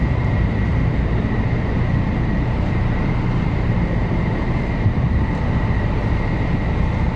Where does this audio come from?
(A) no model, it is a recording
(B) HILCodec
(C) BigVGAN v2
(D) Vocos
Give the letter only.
C